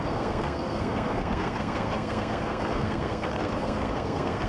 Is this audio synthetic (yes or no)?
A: yes